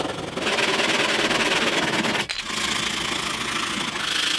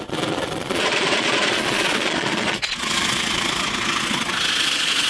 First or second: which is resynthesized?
second